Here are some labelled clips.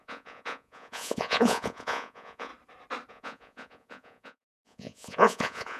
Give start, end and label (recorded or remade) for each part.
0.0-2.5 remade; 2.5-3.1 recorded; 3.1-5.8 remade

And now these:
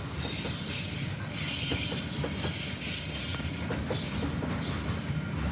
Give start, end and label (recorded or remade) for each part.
0.0-5.5 recorded

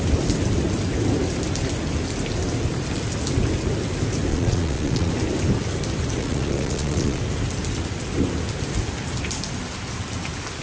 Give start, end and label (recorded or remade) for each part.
0.0-4.3 recorded; 4.3-5.1 remade; 5.1-6.2 recorded; 6.2-7.2 remade; 7.2-10.6 recorded

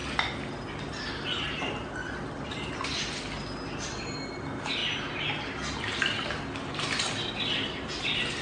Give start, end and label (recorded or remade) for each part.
0.0-8.4 recorded